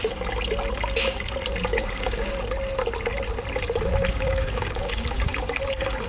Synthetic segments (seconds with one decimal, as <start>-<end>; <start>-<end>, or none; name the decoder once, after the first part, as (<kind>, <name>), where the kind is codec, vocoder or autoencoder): 1.7-2.3 (codec, DAC); 4.1-5.6